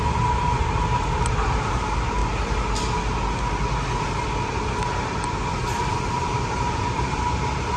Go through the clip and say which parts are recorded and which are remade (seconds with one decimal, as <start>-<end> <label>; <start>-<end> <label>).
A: 0.0-2.2 remade; 2.2-5.9 recorded; 5.9-7.8 remade